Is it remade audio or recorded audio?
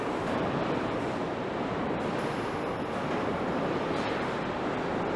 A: recorded